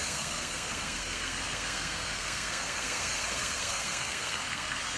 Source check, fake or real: fake